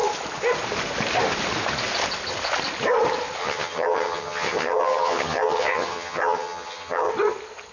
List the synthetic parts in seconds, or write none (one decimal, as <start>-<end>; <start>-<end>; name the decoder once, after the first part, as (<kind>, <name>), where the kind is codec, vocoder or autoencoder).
3.4-7.1 (vocoder, HiFi-GAN)